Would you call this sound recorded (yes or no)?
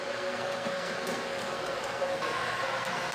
no